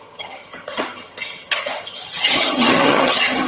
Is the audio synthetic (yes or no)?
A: yes